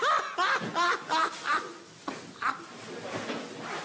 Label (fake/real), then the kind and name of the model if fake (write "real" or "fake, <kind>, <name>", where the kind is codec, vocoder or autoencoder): real